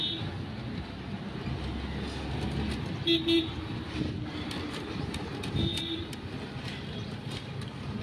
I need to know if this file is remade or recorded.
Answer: recorded